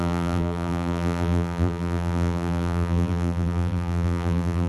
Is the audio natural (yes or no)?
no